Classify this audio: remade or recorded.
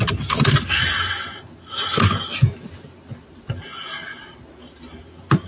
recorded